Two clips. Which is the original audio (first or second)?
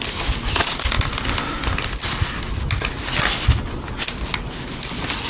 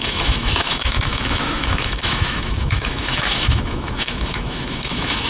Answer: first